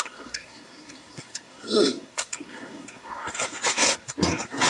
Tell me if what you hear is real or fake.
fake